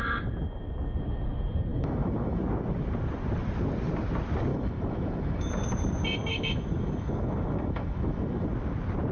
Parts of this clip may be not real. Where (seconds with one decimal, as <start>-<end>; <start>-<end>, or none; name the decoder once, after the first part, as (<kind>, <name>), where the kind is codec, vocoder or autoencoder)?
1.7-2.4 (autoencoder, DAC-VAE); 4.5-5.5; 6.3-8.5